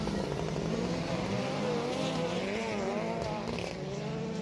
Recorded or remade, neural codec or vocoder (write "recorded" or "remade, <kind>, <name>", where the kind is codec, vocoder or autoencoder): recorded